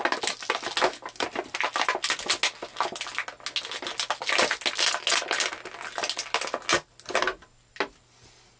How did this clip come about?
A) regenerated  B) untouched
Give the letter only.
B